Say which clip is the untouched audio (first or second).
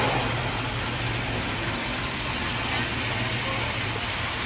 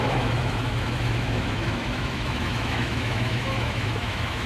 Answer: first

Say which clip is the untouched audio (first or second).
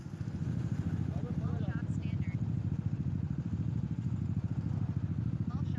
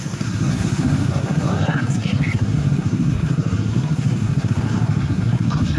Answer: first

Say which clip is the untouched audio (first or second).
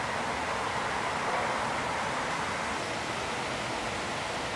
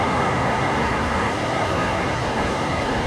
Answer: first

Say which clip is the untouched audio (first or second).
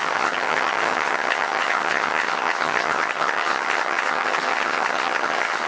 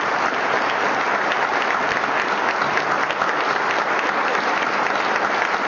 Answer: second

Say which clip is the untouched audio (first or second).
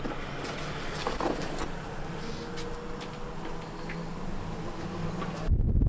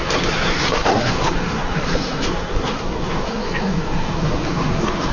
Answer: first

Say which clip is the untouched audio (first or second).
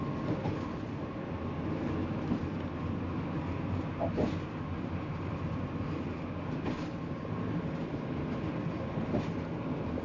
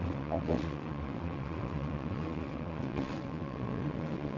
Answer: first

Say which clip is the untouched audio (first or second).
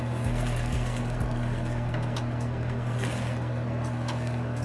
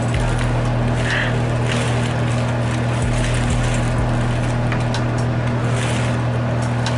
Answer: second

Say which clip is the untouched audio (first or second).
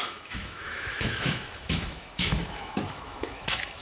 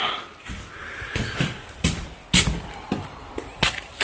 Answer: second